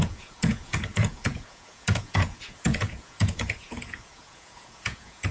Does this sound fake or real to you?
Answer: fake